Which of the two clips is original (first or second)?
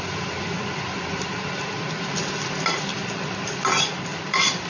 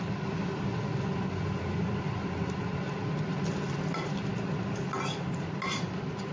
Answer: second